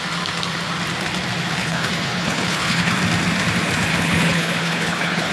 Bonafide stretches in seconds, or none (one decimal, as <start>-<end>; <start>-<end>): 0.0-1.6; 2.9-3.9